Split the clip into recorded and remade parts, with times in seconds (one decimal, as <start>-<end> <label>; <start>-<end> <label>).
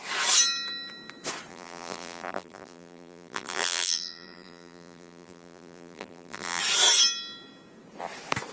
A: 0.0-1.5 recorded; 1.5-6.6 remade; 6.6-8.5 recorded